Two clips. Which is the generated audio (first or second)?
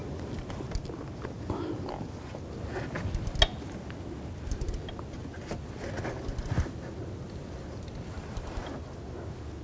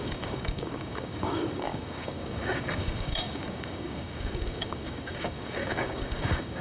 second